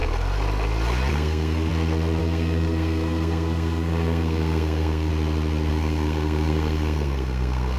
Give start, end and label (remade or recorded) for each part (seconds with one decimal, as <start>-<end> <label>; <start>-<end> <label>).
0.0-1.1 recorded; 1.1-1.7 remade; 1.7-2.2 recorded; 2.2-5.1 remade; 5.1-5.7 recorded; 5.7-7.8 remade